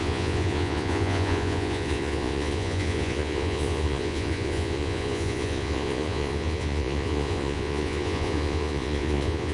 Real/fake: fake